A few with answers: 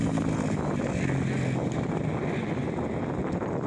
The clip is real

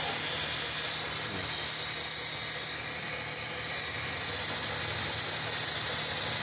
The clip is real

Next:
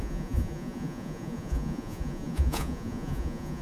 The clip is fake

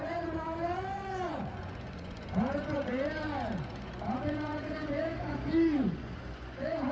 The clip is fake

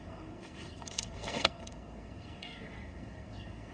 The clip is fake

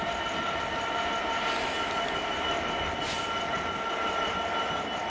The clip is real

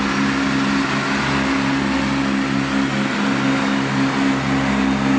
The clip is real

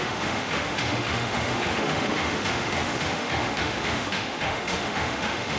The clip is fake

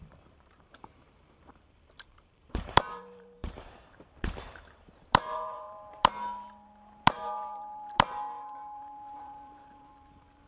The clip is fake